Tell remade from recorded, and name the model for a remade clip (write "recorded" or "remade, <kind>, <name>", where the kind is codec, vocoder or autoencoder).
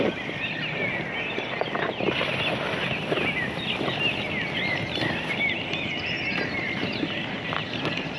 recorded